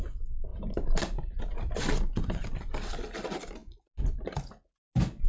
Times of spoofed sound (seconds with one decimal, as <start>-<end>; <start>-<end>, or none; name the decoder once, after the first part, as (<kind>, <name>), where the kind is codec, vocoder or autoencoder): none